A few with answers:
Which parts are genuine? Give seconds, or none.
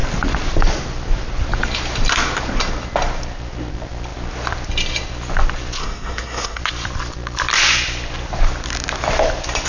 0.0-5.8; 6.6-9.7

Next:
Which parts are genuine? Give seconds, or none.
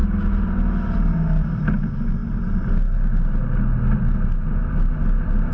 0.0-5.5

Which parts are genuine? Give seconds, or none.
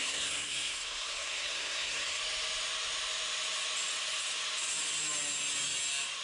2.2-6.2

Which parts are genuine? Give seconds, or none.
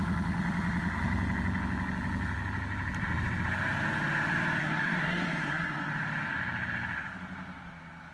0.0-4.6; 5.9-8.1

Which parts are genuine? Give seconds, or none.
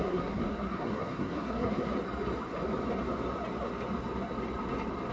1.9-5.1